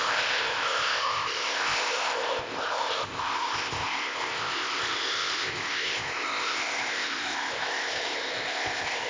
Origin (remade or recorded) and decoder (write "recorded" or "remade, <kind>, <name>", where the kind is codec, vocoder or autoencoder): remade, codec, ZipCodec